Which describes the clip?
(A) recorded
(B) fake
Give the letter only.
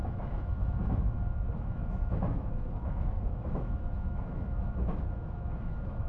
B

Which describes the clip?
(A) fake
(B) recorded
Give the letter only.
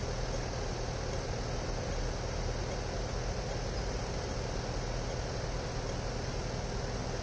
B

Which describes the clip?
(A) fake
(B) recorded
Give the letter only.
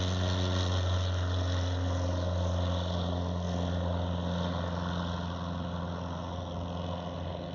B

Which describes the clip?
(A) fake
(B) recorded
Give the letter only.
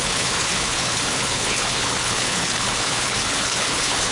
A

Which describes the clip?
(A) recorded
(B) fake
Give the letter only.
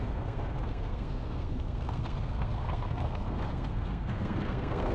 B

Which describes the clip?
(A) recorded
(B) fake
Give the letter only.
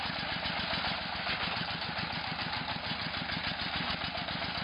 A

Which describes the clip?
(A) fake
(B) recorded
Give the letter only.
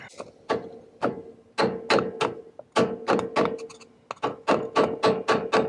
B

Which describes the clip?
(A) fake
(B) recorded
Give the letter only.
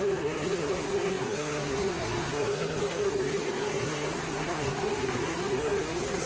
A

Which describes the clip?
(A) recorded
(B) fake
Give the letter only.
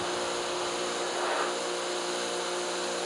A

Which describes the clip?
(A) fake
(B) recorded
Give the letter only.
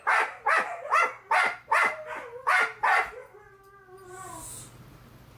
B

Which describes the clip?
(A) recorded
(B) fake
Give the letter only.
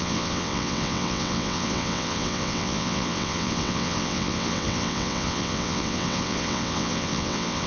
B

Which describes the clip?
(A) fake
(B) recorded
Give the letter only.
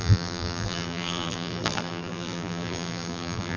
A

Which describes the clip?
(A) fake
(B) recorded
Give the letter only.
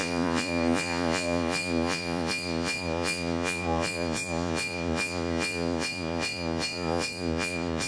A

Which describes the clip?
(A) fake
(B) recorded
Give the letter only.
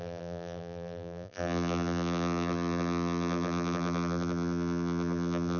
A